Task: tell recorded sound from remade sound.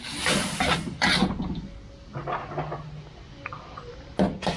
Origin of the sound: recorded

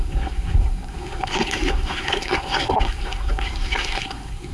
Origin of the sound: remade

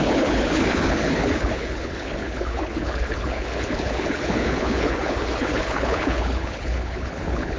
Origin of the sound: remade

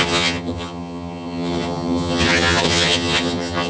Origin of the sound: remade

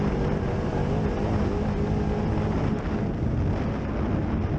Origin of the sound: recorded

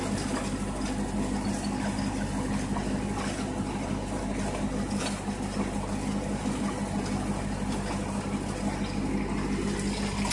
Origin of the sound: recorded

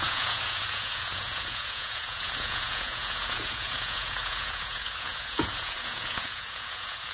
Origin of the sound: remade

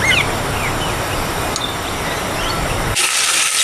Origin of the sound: recorded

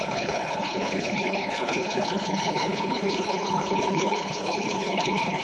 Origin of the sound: remade